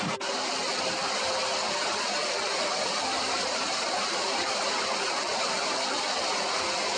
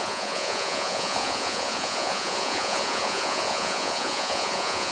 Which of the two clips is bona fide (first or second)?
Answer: first